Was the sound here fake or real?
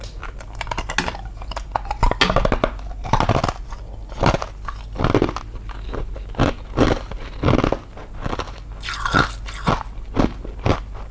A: real